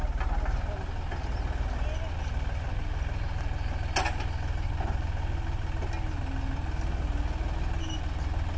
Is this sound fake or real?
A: real